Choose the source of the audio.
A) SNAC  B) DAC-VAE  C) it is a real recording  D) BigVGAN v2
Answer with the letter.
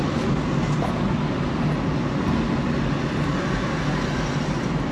C